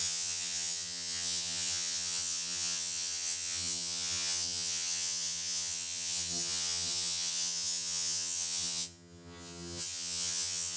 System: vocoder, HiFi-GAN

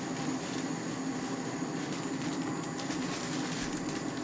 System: none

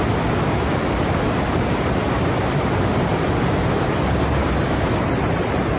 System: none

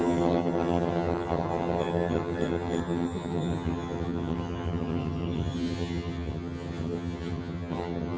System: vocoder, HiFi-GAN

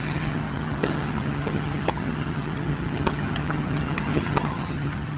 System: vocoder, HiFi-GAN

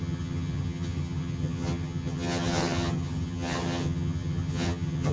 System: vocoder, HiFi-GAN